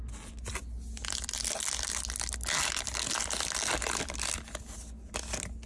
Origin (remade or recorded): recorded